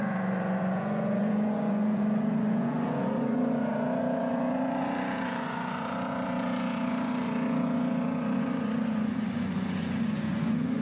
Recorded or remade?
remade